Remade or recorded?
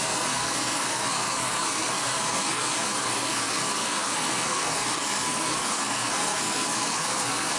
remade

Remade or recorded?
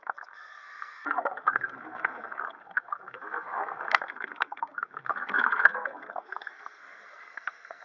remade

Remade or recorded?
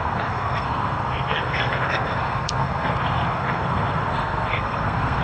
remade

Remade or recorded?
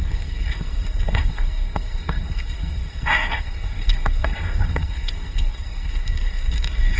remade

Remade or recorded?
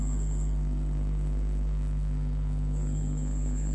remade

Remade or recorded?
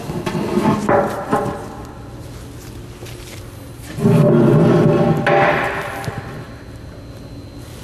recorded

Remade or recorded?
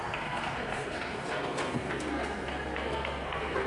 remade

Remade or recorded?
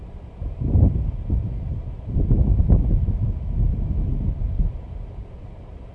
recorded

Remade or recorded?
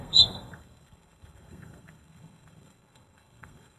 remade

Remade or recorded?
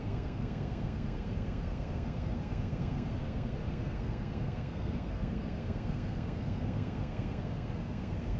remade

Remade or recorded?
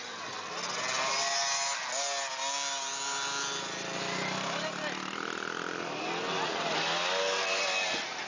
recorded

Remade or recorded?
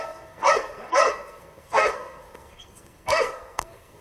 remade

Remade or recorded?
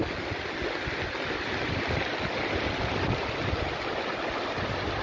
recorded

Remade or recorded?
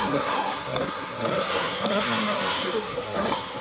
remade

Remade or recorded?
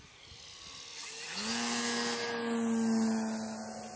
recorded